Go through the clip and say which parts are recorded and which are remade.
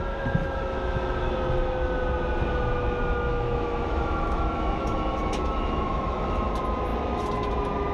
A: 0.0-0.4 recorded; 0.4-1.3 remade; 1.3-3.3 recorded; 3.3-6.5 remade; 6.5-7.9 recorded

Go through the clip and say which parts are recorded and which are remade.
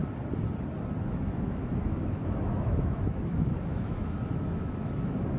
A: 0.0-1.0 recorded; 1.0-5.4 remade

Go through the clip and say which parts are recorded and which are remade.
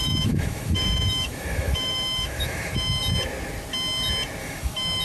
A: 0.0-3.0 remade; 3.0-4.4 recorded; 4.4-5.0 remade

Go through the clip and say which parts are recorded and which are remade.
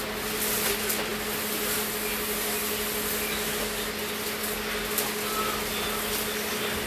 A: 0.0-6.9 recorded